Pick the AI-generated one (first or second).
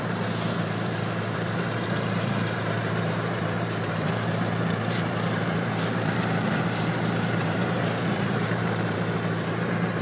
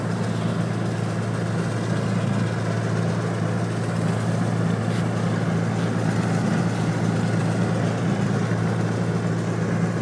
first